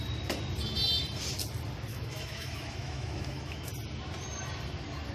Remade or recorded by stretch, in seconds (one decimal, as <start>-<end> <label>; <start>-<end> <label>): 0.0-1.9 recorded; 1.9-3.7 remade; 3.7-5.1 recorded